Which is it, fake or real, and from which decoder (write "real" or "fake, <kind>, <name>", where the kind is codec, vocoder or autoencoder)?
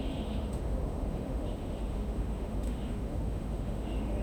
fake, autoencoder, DAC-VAE